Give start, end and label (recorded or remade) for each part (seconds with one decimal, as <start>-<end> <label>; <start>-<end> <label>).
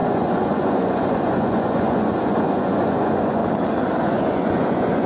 0.0-3.4 remade; 3.4-4.0 recorded; 4.0-5.1 remade